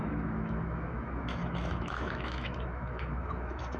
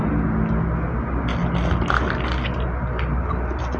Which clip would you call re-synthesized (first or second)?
first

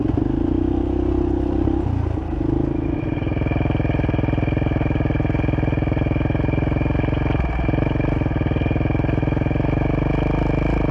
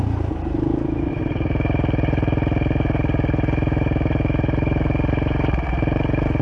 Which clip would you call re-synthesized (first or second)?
second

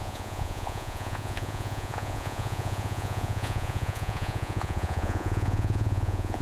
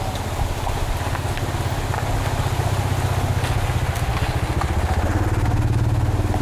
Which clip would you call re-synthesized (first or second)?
first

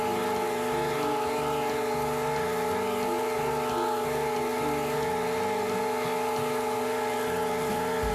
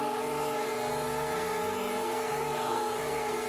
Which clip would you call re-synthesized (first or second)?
second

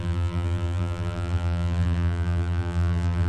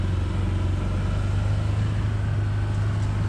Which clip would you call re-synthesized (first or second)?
first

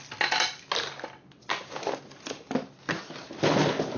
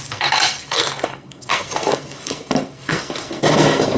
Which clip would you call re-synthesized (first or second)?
second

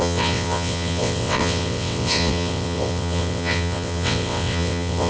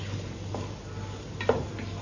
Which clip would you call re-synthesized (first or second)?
first